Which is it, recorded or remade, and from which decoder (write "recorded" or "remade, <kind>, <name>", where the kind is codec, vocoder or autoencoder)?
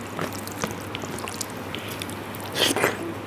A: recorded